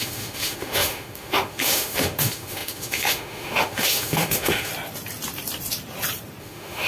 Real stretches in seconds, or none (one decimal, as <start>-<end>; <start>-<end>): 4.7-6.4